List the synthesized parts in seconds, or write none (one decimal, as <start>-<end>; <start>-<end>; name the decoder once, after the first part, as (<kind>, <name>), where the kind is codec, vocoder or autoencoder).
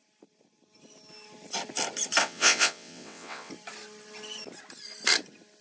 2.2-3.5 (vocoder, WaveNeXt)